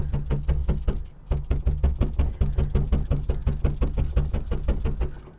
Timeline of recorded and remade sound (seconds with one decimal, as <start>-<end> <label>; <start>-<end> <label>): 0.0-5.4 recorded